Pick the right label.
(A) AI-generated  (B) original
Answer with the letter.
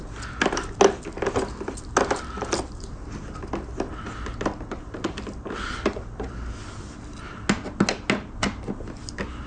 B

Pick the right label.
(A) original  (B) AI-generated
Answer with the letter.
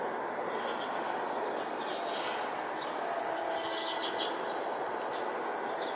A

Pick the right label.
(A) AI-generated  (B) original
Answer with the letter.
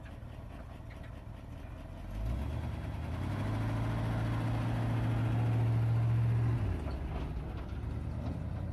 B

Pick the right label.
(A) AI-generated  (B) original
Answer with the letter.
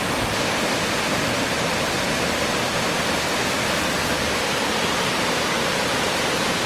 B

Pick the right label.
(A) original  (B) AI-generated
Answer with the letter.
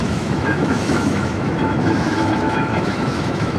B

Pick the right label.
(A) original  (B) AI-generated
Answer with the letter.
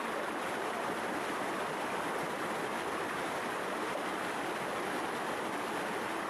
A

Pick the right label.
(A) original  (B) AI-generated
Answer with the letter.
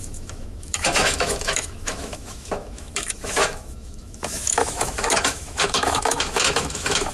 B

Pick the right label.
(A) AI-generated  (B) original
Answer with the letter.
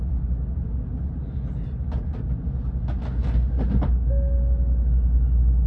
B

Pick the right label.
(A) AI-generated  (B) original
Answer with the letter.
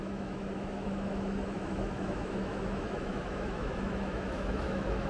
A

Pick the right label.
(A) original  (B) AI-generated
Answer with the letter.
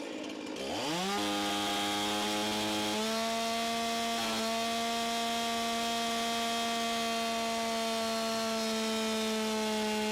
A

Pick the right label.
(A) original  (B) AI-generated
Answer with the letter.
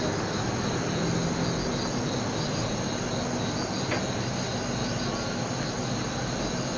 A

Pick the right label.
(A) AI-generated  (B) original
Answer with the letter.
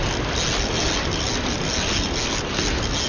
B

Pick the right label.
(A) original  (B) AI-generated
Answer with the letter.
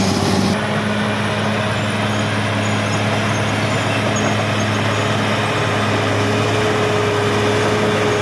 A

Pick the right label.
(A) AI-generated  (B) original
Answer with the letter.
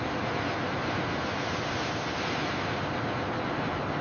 B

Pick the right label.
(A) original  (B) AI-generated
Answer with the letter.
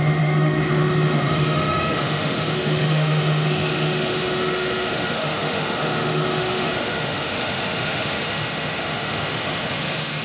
B